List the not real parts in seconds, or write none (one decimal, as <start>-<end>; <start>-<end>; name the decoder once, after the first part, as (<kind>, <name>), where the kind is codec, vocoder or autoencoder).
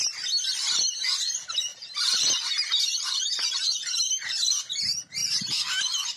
1.7-4.4 (vocoder, BigVGAN v2); 5.2-6.2